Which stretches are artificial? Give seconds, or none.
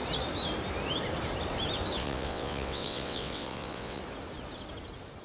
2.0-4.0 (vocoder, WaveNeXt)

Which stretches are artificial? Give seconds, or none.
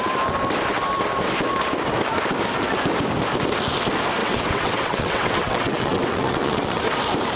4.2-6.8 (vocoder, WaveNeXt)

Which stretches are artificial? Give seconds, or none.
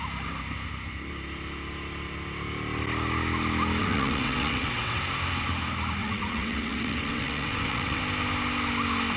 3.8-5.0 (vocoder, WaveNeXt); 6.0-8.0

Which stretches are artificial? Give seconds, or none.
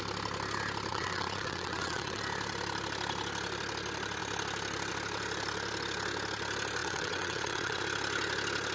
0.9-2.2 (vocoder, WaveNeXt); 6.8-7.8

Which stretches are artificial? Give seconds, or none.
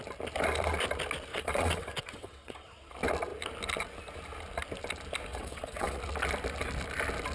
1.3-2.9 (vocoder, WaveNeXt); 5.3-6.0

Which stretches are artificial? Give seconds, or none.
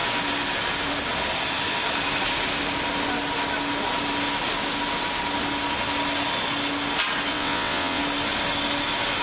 7.3-8.0 (vocoder, WaveNeXt)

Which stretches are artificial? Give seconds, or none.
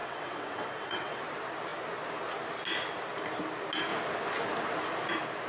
0.0-1.2 (vocoder, WaveNeXt)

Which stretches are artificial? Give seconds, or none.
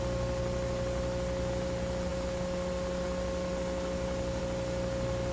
none